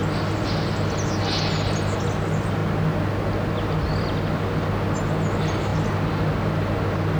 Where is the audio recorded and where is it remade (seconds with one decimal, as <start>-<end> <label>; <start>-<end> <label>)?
0.0-7.2 recorded